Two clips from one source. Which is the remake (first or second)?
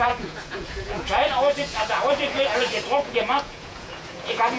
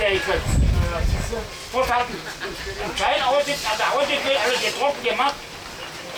first